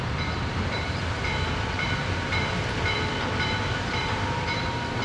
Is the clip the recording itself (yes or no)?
no